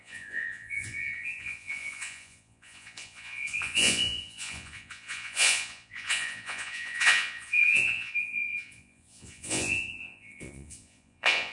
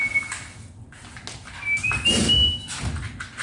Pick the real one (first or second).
second